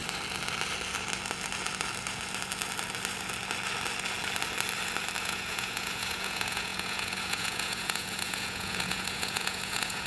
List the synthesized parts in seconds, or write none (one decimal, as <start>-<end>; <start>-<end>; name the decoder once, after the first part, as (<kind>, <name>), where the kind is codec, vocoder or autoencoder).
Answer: 5.2-10.1 (vocoder, Vocos)